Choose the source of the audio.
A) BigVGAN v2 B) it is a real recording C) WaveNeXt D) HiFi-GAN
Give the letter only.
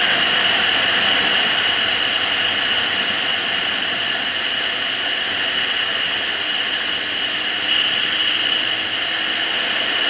B